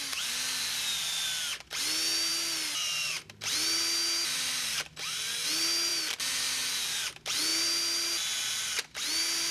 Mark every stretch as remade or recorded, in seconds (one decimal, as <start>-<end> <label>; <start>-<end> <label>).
0.0-9.5 recorded